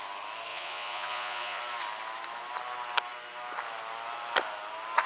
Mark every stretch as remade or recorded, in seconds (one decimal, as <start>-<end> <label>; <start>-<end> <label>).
0.0-0.5 recorded; 0.5-1.6 remade; 1.6-5.1 recorded